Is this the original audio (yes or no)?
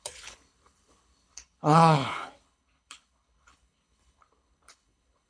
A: no